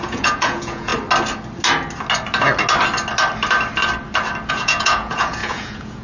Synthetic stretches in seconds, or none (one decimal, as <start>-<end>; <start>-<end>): 0.0-0.9; 4.5-6.0